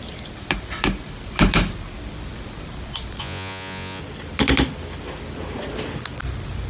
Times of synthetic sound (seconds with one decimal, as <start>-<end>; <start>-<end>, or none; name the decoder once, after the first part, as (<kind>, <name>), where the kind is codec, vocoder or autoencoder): 3.2-4.0 (vocoder, Vocos)